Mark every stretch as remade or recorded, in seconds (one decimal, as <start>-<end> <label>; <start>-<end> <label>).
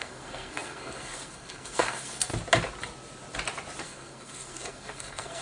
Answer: 0.0-2.3 remade; 2.3-3.8 recorded; 3.8-5.4 remade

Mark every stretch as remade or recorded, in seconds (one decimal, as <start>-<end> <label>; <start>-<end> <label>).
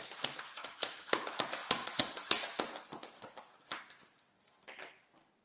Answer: 0.0-0.6 recorded; 0.6-1.2 remade; 1.2-1.6 recorded; 1.6-2.4 remade; 2.4-5.4 recorded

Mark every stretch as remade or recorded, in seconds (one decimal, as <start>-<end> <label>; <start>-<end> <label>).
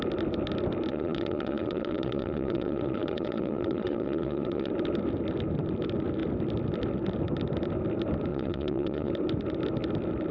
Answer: 0.0-0.9 recorded; 0.9-4.7 remade; 4.7-8.3 recorded; 8.3-9.1 remade; 9.1-10.3 recorded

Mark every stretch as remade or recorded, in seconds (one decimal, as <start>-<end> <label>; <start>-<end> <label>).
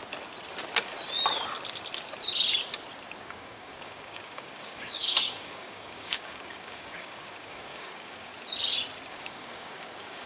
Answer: 0.0-3.2 recorded; 3.2-8.3 remade; 8.3-9.1 recorded; 9.1-10.3 remade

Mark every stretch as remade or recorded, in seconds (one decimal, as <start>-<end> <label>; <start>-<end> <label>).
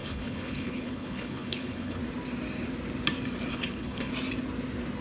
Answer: 0.0-2.0 remade; 2.0-3.5 recorded; 3.5-4.1 remade; 4.1-5.0 recorded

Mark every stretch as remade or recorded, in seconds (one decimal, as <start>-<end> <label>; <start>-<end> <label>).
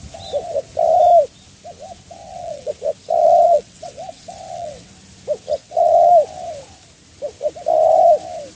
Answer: 0.0-2.2 recorded; 2.2-2.7 remade; 2.7-3.2 recorded; 3.2-4.9 remade; 4.9-5.6 recorded; 5.6-6.1 remade; 6.1-8.6 recorded